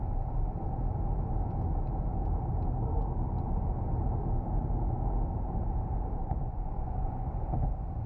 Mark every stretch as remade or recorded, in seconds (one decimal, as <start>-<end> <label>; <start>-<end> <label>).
0.0-6.2 recorded; 6.2-7.3 remade; 7.3-8.1 recorded